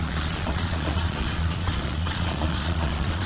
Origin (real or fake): fake